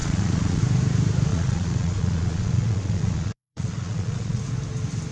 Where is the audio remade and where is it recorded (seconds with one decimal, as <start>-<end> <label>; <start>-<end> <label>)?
0.0-0.6 remade; 0.6-1.3 recorded; 1.3-4.4 remade; 4.4-5.1 recorded